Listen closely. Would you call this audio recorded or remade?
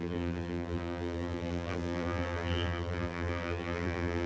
remade